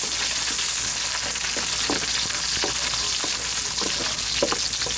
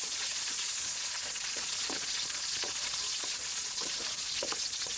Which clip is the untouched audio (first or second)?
first